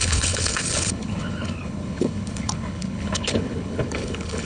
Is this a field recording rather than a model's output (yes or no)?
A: no